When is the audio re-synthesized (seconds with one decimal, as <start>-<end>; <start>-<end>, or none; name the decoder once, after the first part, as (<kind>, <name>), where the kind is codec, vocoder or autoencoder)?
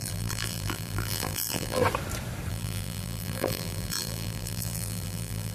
0.0-1.8 (vocoder, BigVGAN v2); 2.5-5.5